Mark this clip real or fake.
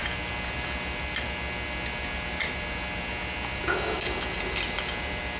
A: real